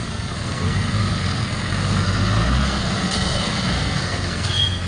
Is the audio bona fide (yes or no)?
no